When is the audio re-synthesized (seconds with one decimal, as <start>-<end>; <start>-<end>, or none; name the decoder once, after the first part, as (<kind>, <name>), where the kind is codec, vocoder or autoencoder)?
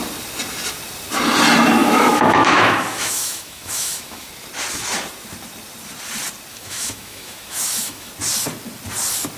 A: 1.8-4.3 (autoencoder, DAC-VAE); 6.5-8.1